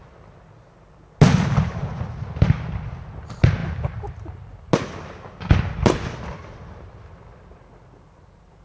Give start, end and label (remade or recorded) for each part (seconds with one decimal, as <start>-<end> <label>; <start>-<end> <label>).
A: 0.0-8.6 recorded